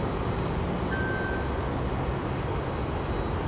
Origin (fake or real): real